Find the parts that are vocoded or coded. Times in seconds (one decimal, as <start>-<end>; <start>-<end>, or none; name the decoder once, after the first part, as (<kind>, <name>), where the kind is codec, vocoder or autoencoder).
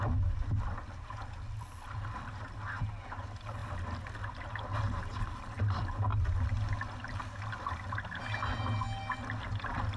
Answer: none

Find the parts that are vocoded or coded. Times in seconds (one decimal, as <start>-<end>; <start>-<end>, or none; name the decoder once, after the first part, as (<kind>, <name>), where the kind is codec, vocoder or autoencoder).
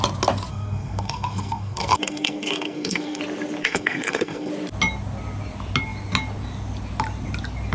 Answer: 0.5-3.2 (codec, SNAC); 3.6-4.5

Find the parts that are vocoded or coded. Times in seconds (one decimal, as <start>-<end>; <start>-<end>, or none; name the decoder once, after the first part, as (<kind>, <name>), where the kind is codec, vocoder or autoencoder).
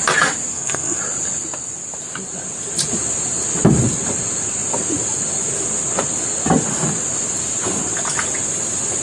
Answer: 0.5-1.0 (codec, SNAC)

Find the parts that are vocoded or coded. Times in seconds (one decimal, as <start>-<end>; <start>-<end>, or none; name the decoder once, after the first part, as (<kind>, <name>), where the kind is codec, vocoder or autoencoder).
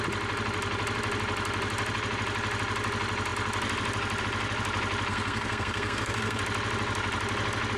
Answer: 5.1-6.4 (codec, SNAC)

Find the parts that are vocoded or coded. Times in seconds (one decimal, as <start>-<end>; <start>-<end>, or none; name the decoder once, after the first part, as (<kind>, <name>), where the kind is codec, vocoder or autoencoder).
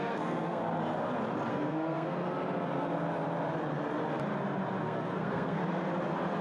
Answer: 0.0-0.6 (codec, SNAC); 1.5-2.2; 4.8-5.6